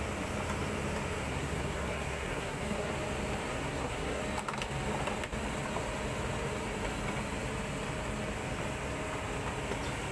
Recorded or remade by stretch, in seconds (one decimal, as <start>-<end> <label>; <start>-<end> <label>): 0.0-1.2 recorded; 1.2-2.9 remade; 2.9-3.5 recorded; 3.5-4.2 remade; 4.2-10.1 recorded